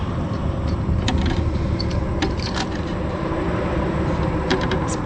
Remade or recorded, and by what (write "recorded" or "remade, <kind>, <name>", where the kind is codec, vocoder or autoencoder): remade, vocoder, BigVGAN v2